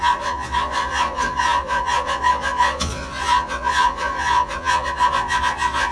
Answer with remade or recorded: remade